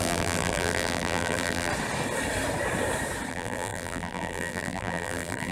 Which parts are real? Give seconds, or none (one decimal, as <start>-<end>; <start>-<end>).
1.7-3.3